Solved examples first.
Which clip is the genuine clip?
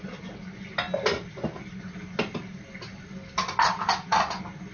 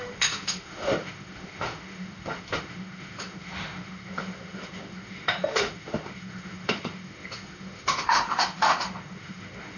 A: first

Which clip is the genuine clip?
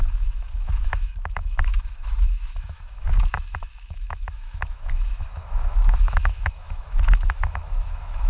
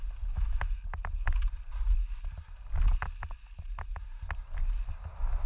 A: second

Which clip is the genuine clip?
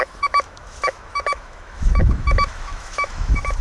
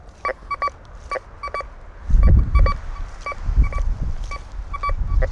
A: second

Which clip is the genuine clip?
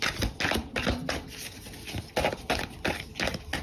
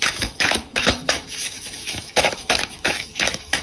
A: first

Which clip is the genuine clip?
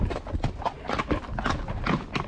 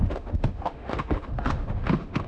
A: first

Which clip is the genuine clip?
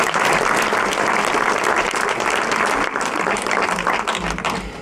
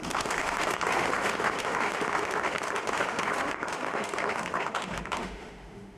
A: first